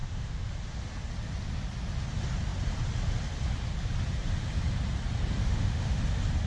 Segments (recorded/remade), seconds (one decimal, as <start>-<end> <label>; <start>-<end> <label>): 0.0-0.5 remade; 0.5-5.4 recorded; 5.4-6.0 remade; 6.0-6.5 recorded